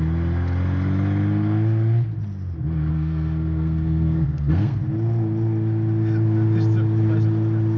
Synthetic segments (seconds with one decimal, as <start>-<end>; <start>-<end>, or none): 2.9-4.8